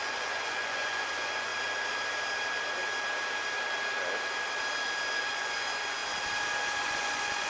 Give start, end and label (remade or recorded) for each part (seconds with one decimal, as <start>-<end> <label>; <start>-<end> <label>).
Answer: 0.0-1.5 remade; 1.5-5.2 recorded; 5.2-6.0 remade; 6.0-6.8 recorded; 6.8-7.5 remade